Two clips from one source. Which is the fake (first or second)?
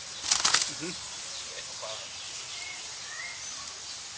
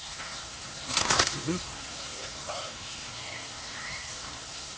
second